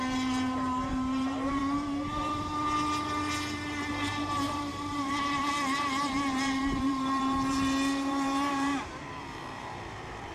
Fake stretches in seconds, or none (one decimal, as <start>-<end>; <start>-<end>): 0.0-1.6; 3.9-10.3